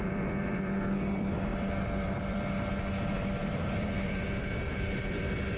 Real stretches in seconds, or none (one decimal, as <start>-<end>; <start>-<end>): none